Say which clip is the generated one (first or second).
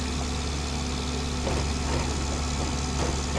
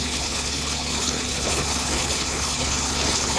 second